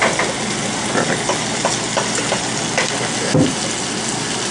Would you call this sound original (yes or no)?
yes